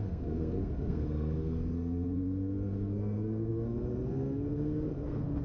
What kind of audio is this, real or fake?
fake